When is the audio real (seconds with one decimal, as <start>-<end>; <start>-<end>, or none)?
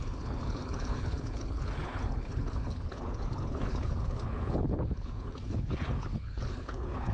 none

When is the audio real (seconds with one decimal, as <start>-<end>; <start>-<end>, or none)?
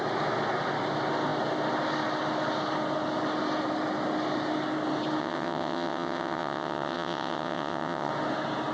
0.0-5.2; 8.1-8.7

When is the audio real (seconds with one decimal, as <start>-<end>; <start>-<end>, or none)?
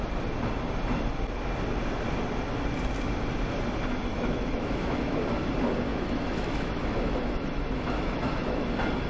0.0-4.1; 5.2-5.9; 8.7-9.1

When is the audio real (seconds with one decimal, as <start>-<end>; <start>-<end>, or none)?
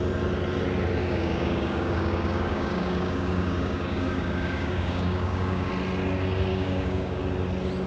0.0-1.0; 5.7-6.5; 7.2-7.9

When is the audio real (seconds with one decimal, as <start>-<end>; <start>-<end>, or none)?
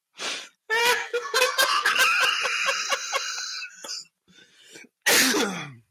0.0-0.8; 1.9-5.9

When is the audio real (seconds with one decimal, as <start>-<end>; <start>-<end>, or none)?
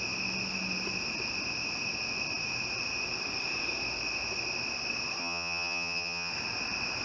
0.0-5.2; 6.3-7.0